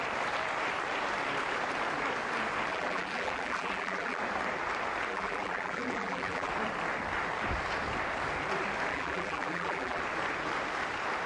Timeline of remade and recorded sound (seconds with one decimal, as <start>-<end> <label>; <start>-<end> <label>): 0.0-2.7 recorded; 2.7-4.2 remade; 4.2-5.1 recorded; 5.1-6.5 remade; 6.5-8.9 recorded; 8.9-10.0 remade; 10.0-11.3 recorded